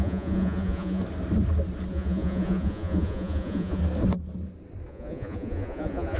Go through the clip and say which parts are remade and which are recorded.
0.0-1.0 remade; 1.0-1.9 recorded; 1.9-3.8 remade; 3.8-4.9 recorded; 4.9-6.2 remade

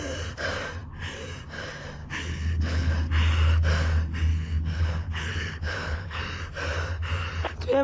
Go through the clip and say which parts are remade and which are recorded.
0.0-2.0 recorded; 2.0-2.9 remade; 2.9-4.3 recorded; 4.3-6.2 remade; 6.2-7.8 recorded

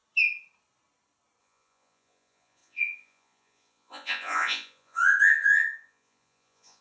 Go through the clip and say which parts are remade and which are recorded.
0.0-1.4 recorded; 1.4-6.8 remade

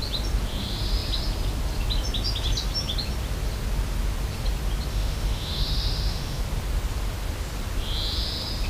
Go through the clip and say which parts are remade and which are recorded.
0.0-4.9 recorded; 4.9-6.4 remade; 6.4-8.7 recorded

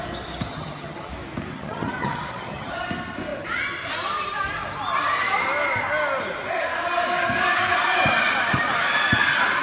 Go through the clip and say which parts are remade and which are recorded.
0.0-0.5 recorded; 0.5-1.1 remade; 1.1-1.5 recorded; 1.5-2.7 remade; 2.7-9.6 recorded